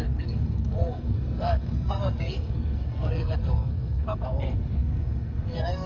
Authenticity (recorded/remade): remade